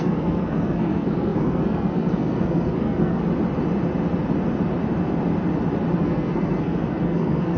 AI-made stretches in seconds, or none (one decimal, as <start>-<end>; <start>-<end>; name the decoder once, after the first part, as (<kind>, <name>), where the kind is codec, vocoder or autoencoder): 0.0-3.2 (codec, SNAC); 6.0-7.6